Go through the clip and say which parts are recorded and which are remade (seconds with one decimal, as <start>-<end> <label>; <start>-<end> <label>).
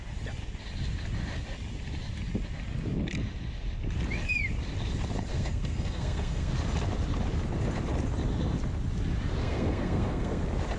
0.0-5.3 recorded; 5.3-6.5 remade; 6.5-9.4 recorded; 9.4-10.4 remade; 10.4-10.8 recorded